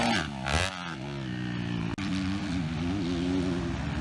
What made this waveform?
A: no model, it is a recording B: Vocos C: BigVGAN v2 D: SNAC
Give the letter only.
A